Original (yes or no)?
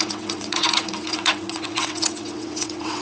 no